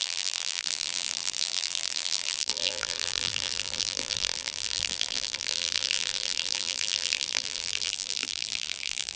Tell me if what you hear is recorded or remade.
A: remade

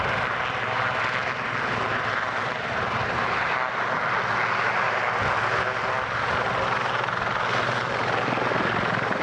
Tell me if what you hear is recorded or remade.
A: recorded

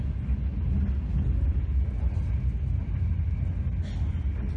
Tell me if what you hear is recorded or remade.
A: recorded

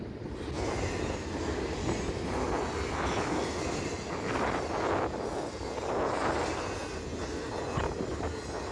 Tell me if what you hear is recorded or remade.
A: recorded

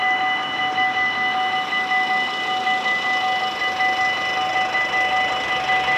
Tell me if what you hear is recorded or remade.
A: recorded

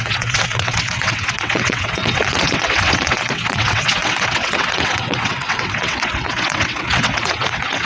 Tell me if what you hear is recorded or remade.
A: remade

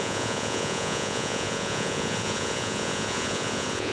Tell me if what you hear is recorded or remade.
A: remade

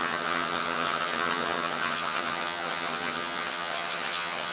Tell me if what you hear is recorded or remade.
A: remade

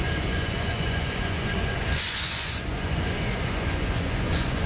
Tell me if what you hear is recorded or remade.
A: remade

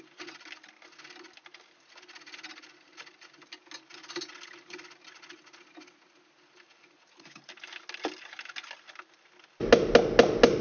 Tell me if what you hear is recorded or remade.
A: recorded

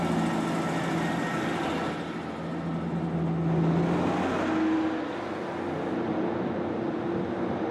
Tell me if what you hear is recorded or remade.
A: recorded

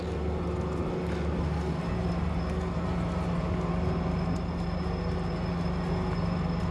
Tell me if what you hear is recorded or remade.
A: recorded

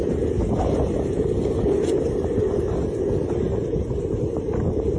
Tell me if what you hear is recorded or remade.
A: recorded